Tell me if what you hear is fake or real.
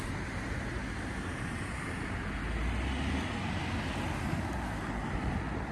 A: real